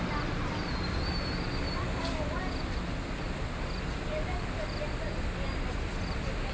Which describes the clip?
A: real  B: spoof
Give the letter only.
A